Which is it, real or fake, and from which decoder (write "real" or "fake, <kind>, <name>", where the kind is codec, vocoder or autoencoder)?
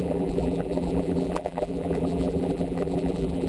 fake, vocoder, BigVGAN v2